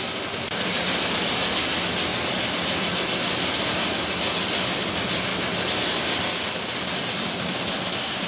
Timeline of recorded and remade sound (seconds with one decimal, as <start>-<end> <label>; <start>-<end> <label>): 0.0-8.3 recorded